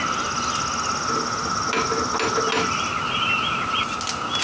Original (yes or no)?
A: yes